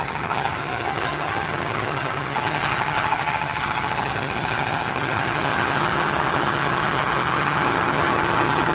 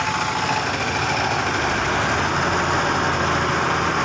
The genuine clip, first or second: second